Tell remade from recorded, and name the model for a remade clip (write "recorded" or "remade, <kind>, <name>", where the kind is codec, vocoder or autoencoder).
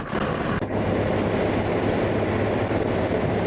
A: recorded